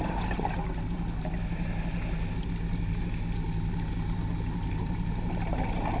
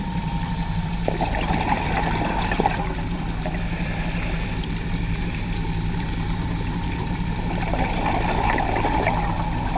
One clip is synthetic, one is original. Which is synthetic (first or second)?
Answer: second